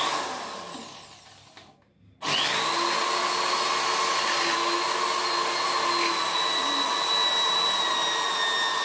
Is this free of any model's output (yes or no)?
yes